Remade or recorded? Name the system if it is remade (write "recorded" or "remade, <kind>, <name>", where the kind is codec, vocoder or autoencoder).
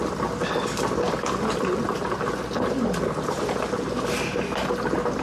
recorded